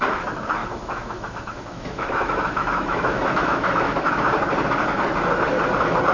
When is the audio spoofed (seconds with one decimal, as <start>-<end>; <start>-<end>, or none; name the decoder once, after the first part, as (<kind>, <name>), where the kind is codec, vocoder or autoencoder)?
0.6-4.2 (autoencoder, DAC-VAE)